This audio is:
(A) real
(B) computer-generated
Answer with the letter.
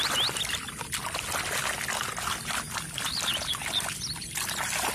A